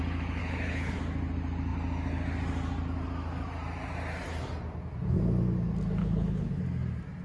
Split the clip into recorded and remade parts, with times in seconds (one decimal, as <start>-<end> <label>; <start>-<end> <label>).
0.0-0.4 recorded; 0.4-1.0 remade; 1.0-6.0 recorded; 6.0-6.6 remade; 6.6-7.2 recorded